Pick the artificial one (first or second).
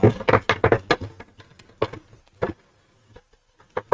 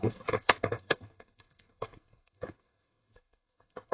second